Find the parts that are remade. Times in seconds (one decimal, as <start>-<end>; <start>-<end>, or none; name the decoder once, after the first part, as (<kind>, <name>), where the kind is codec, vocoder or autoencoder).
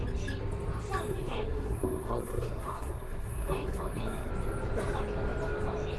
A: 1.1-4.3 (codec, SNAC)